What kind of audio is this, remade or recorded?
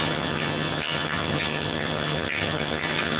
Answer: remade